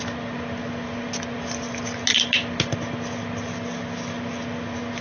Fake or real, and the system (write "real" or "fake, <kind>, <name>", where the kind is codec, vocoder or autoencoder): real